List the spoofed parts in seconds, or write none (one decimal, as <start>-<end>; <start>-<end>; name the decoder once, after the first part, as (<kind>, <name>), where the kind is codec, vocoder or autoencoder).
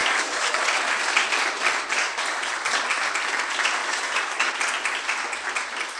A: 0.0-0.8 (codec, DAC); 2.0-2.5; 3.8-4.5